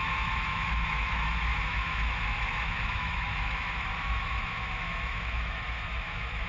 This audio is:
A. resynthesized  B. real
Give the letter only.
A